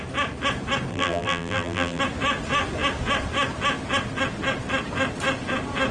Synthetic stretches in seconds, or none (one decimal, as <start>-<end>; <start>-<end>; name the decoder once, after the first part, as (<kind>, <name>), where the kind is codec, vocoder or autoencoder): 0.9-2.0 (vocoder, BigVGAN v2)